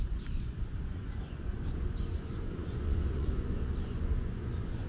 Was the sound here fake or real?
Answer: fake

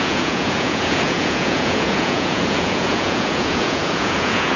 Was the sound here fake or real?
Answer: fake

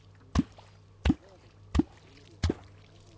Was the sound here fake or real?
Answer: real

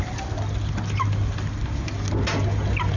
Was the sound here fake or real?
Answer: real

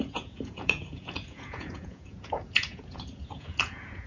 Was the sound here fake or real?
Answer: fake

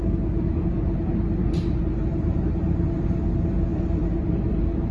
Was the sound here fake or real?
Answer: real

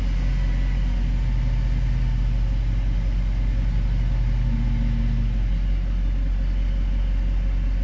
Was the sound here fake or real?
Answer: real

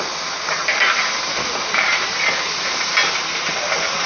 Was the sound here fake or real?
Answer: real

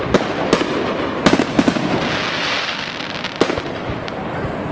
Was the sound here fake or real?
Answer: real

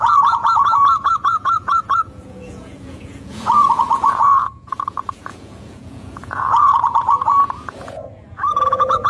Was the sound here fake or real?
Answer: fake